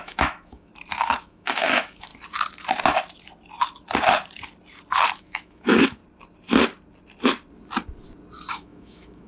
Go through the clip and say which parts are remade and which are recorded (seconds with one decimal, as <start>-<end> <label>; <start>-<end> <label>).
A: 0.0-0.7 remade; 0.7-1.2 recorded; 1.2-2.1 remade; 2.1-5.2 recorded; 5.2-6.0 remade; 6.0-8.5 recorded; 8.5-9.3 remade